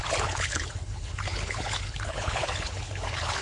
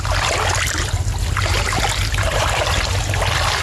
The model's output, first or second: first